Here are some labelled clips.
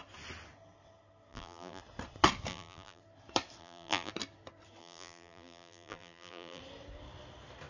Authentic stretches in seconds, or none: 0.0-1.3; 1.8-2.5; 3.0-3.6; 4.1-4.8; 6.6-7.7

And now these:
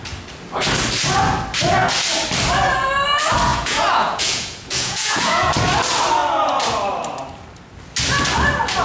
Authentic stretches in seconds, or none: 0.0-3.5; 5.5-8.8

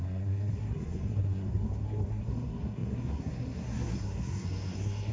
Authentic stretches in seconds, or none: none

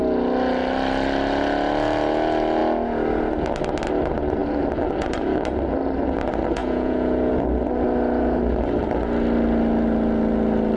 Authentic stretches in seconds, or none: 0.0-6.6; 7.3-10.8